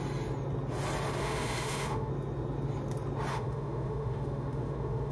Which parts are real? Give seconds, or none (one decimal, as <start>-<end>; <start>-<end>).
0.0-1.2; 2.1-3.3